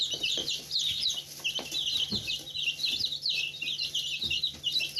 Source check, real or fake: real